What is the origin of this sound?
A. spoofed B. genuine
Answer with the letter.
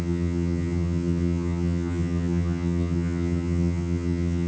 A